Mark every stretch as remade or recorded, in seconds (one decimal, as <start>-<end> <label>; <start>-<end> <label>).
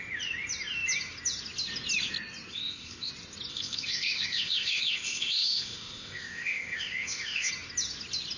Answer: 0.0-2.5 recorded; 2.5-3.1 remade; 3.1-3.5 recorded; 3.5-7.5 remade; 7.5-8.4 recorded